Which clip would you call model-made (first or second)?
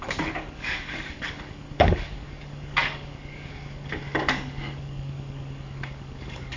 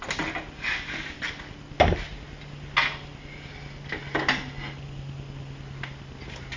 first